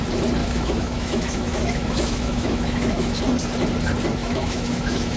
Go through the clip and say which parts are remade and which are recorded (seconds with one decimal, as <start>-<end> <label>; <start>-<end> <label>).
0.0-0.4 recorded; 0.4-3.2 remade; 3.2-4.2 recorded; 4.2-5.2 remade